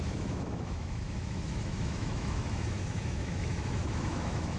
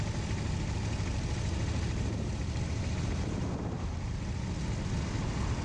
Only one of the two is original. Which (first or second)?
second